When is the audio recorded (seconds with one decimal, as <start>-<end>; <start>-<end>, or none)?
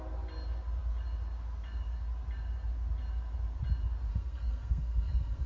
0.0-4.1